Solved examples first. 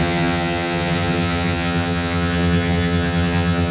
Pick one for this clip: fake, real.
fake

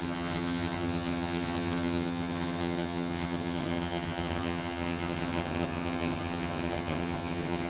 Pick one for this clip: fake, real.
fake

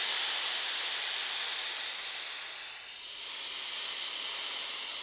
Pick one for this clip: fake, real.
real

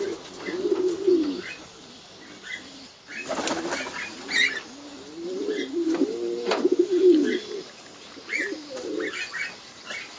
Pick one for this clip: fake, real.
real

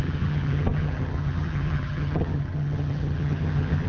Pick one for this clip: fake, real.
fake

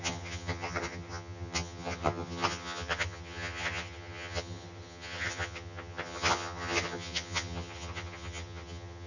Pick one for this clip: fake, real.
fake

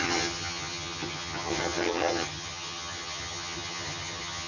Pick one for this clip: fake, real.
fake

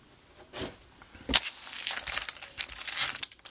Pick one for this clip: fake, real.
real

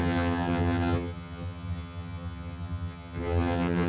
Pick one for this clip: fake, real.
fake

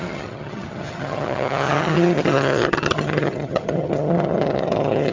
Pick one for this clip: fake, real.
fake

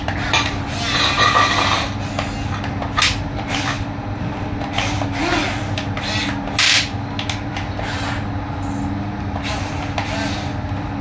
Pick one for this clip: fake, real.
real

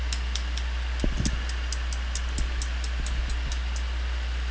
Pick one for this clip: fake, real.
real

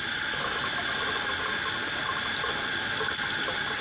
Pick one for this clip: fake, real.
real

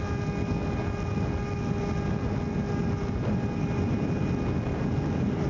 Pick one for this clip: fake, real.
real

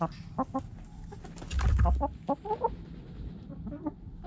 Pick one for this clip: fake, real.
real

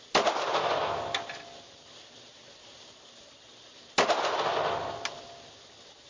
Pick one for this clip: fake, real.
real